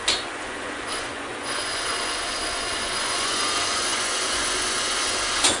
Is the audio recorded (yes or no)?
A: no